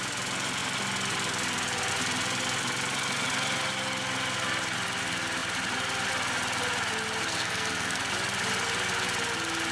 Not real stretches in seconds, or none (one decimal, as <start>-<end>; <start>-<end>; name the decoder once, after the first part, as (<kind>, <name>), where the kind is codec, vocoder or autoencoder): 7.3-8.1 (codec, SNAC)